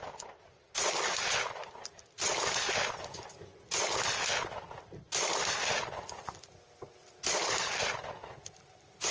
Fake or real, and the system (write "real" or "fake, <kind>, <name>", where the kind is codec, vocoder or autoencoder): real